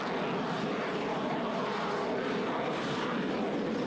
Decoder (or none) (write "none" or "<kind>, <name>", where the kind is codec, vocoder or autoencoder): none